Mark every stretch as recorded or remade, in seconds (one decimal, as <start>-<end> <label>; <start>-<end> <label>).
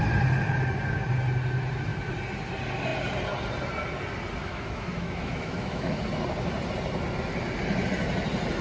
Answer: 0.0-4.4 recorded; 4.4-6.0 remade; 6.0-8.6 recorded